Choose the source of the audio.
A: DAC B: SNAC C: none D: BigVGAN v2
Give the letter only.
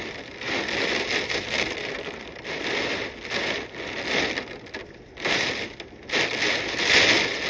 C